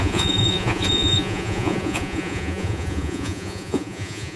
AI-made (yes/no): yes